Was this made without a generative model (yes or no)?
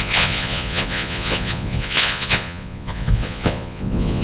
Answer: no